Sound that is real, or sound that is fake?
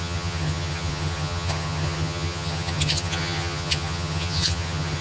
fake